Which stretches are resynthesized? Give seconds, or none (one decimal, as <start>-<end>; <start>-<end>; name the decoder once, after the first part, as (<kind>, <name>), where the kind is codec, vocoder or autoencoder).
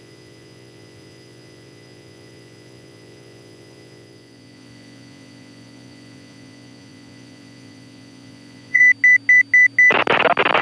0.0-8.8 (vocoder, Vocos)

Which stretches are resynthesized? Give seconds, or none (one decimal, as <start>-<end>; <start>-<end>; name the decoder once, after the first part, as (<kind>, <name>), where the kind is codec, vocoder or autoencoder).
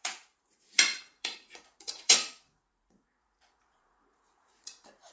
0.0-5.1 (vocoder, Vocos)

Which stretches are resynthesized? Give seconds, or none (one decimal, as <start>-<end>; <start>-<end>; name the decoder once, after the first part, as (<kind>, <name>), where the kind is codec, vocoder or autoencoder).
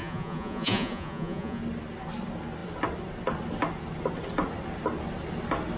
0.0-1.6 (vocoder, Vocos)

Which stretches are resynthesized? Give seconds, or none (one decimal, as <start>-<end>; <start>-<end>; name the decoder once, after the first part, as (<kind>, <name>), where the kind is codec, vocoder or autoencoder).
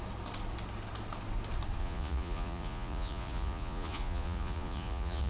1.8-5.3 (vocoder, Vocos)